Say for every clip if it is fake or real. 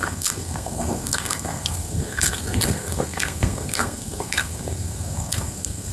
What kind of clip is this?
fake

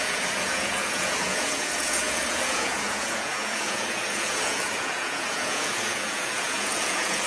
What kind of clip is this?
fake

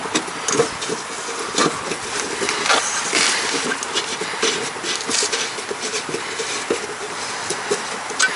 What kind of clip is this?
real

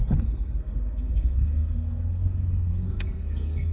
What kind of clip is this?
fake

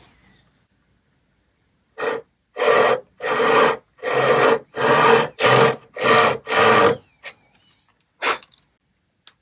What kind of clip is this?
real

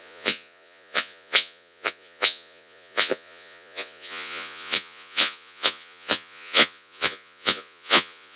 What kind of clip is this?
fake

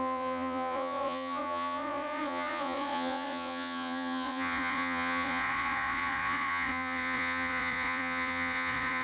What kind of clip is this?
fake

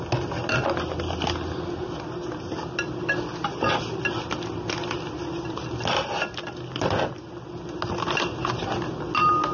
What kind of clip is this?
real